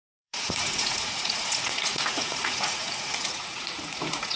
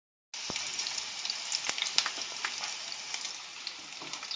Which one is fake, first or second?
first